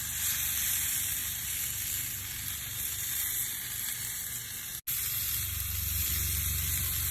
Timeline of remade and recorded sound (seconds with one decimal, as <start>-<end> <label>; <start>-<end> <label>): 0.0-7.1 recorded